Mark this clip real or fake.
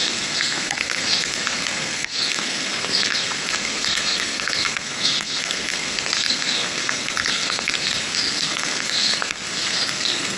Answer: fake